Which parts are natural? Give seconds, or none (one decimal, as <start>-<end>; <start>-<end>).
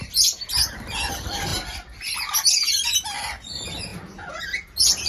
0.0-5.1